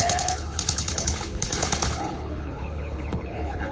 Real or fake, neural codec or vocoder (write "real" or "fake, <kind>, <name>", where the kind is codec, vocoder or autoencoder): fake, codec, HILCodec